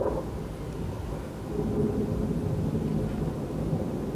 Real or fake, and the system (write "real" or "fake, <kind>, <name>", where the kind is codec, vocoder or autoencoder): real